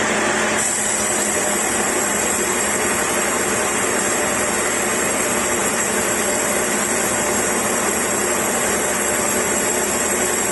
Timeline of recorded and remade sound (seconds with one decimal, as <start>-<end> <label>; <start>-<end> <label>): 0.0-10.5 recorded

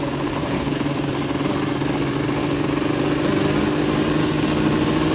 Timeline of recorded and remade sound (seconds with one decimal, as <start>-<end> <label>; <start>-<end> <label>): 0.0-0.4 recorded; 0.4-1.1 remade; 1.1-5.1 recorded